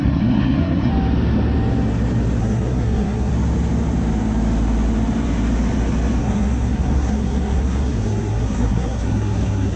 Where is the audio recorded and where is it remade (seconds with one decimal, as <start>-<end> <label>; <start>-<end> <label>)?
0.0-0.9 remade; 0.9-2.4 recorded; 2.4-3.3 remade; 3.3-6.2 recorded; 6.2-9.8 remade